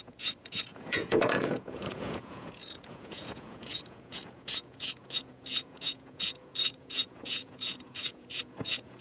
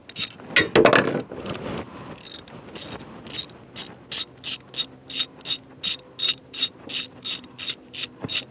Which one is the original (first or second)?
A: second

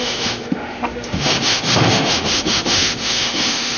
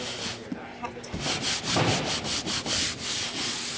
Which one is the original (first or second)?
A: second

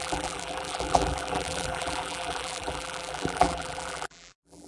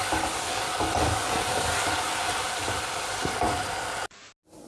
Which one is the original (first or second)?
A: second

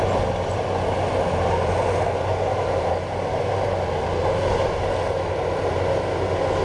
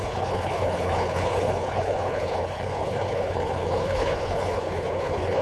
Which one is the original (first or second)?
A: first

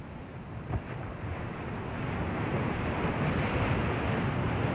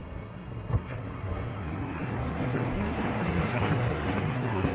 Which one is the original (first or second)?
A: first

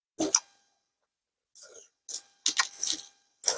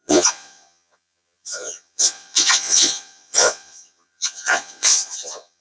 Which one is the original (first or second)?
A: first